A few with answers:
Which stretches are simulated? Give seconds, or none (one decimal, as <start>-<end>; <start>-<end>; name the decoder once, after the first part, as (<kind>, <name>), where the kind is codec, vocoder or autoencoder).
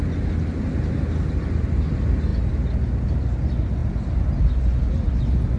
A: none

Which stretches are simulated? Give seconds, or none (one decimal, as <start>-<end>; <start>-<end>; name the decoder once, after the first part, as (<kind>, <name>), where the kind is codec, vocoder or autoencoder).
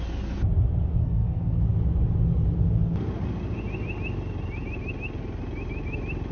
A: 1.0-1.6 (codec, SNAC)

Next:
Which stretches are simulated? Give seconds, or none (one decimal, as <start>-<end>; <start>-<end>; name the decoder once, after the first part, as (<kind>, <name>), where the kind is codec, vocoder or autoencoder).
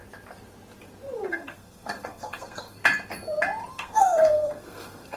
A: 1.3-2.8 (codec, SNAC); 3.7-5.2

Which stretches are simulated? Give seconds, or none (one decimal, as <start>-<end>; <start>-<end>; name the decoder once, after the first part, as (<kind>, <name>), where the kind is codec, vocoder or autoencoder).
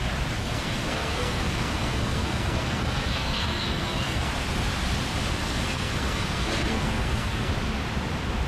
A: 0.4-4.3 (codec, SNAC); 5.4-7.5